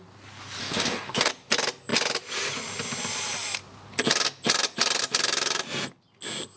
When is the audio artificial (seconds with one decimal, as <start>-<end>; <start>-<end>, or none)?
0.6-1.3